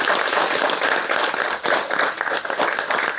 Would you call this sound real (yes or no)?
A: yes